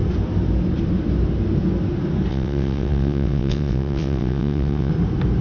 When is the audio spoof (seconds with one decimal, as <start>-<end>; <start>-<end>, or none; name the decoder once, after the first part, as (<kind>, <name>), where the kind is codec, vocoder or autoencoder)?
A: 2.3-4.9 (vocoder, WaveNeXt)